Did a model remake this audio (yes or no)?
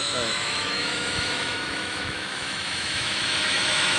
yes